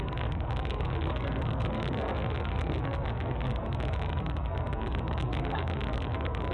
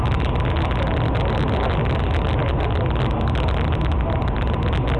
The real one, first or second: second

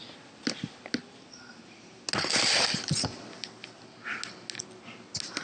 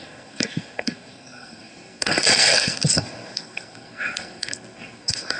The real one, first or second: first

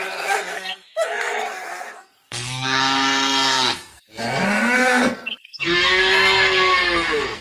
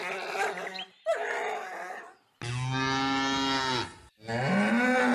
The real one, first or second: second